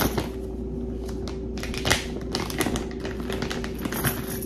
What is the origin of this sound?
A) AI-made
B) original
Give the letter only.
B